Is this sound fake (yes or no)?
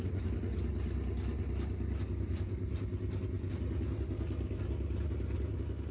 no